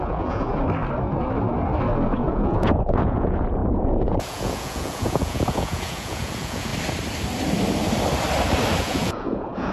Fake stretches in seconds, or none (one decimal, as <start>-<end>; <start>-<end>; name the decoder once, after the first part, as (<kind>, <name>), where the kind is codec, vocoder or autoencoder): 0.0-0.6 (vocoder, Vocos); 2.1-6.7; 8.8-9.7